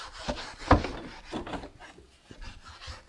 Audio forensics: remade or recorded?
recorded